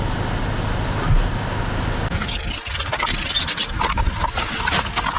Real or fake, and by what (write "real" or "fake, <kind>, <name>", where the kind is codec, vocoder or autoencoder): real